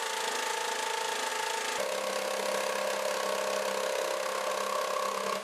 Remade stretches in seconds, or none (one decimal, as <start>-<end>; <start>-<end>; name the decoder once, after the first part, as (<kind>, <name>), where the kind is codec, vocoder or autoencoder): none